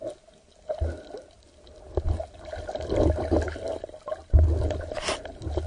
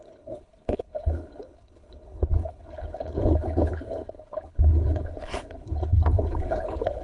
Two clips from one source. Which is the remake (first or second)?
second